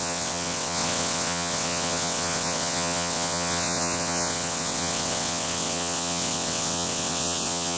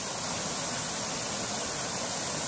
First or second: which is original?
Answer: second